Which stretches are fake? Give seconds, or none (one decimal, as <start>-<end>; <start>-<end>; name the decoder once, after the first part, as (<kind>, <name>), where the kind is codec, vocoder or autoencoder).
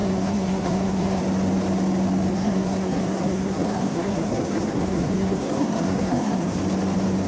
0.0-1.2 (codec, SNAC); 2.3-6.6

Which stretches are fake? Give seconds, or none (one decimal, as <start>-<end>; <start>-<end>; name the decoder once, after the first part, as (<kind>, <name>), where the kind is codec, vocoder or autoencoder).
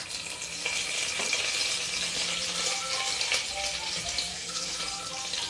4.3-4.8 (codec, SNAC)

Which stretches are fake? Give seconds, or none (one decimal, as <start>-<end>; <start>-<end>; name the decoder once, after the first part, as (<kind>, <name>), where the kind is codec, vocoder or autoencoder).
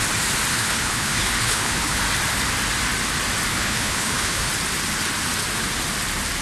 0.5-2.0 (codec, HILCodec); 3.5-4.5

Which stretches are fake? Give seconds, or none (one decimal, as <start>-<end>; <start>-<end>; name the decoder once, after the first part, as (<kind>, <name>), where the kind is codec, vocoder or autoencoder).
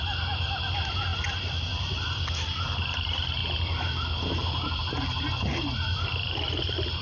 none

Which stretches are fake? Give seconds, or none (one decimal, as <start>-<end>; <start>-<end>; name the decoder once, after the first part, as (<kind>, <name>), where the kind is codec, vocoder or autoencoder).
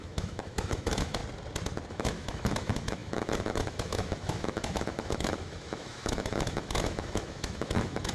0.0-1.2 (autoencoder, DAC-VAE); 1.9-8.1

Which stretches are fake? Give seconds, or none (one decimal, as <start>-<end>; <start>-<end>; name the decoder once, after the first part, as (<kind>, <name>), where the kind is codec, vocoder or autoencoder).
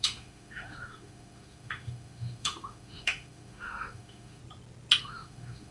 0.0-4.4 (autoencoder, DAC-VAE); 5.0-5.7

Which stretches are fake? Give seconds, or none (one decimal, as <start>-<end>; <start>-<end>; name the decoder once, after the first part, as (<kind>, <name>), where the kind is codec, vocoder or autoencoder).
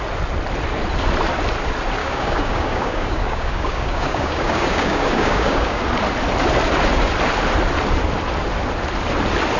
2.0-5.8 (codec, DAC)